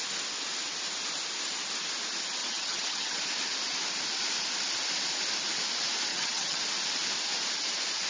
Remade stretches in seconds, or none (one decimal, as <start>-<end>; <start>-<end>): 2.4-3.2; 6.1-6.6